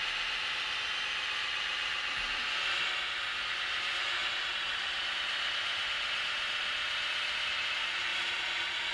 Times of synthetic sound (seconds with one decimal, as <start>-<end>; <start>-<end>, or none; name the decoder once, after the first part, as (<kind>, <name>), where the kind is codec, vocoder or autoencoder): 4.2-7.5 (vocoder, Vocos); 8.1-8.9